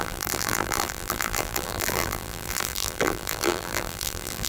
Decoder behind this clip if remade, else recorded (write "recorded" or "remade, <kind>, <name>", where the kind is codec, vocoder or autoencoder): remade, vocoder, BigVGAN v2